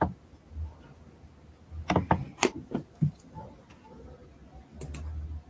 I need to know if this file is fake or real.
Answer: real